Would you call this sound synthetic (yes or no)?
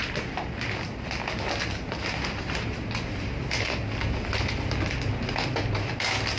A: no